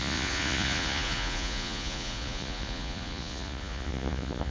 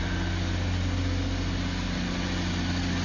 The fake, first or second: first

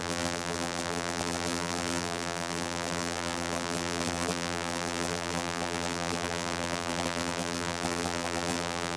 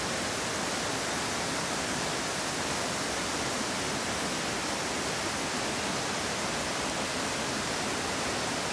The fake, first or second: first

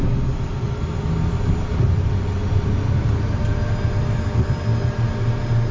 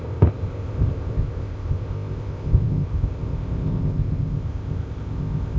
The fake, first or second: second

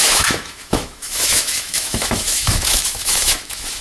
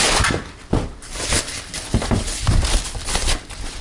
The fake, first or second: first